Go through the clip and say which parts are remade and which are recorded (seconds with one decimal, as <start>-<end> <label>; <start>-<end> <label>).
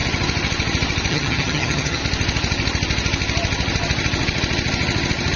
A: 0.0-1.1 recorded; 1.1-2.0 remade; 2.0-5.4 recorded